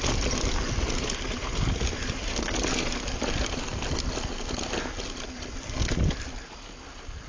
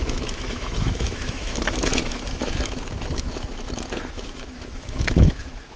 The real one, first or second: first